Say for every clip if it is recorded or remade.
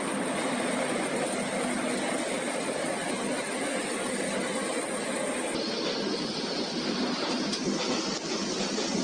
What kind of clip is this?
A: recorded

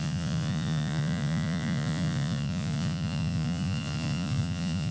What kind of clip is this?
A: remade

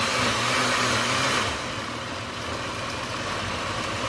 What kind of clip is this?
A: recorded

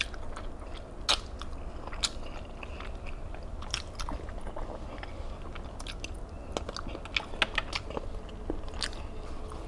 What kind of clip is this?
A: recorded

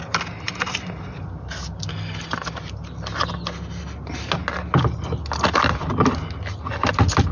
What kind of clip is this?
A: recorded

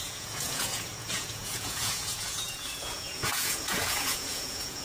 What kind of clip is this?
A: remade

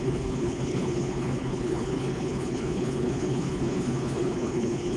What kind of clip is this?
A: remade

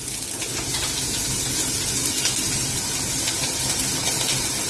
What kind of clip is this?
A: recorded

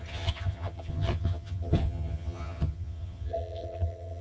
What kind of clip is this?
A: remade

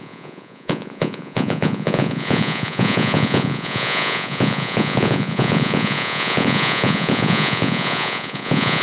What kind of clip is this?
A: remade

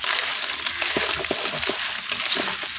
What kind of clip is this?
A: recorded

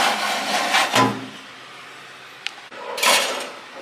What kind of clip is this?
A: recorded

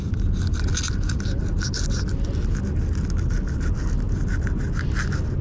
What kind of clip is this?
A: recorded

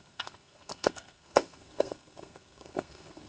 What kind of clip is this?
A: remade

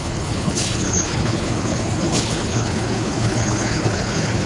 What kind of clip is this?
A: remade